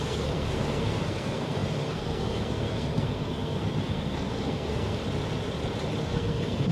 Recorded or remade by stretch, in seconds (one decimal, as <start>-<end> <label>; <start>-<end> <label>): 0.0-5.0 remade; 5.0-6.0 recorded; 6.0-6.7 remade